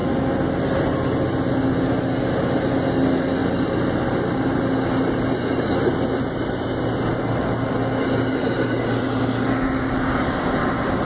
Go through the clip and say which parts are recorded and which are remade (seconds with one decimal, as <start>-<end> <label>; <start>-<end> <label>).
0.0-11.0 recorded